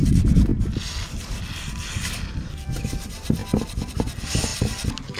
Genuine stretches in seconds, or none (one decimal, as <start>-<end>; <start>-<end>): 0.0-0.5; 2.7-5.2